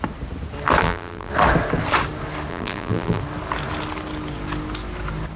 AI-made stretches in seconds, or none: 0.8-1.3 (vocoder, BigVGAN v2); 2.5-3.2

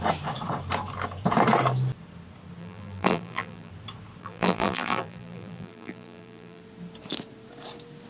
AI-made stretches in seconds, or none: 2.6-3.7 (vocoder, BigVGAN v2); 4.2-6.6